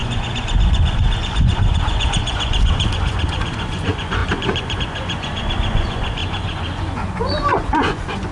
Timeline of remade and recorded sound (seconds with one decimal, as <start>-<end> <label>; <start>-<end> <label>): 0.0-8.3 remade